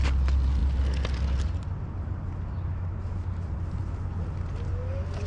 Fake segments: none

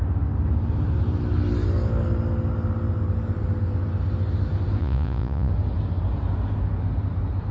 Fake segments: 4.8-5.5 (vocoder, Vocos)